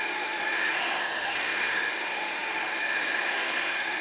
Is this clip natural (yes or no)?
no